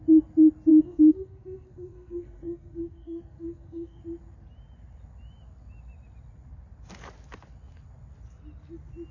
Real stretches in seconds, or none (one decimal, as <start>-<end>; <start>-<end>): 0.0-0.7; 4.0-9.1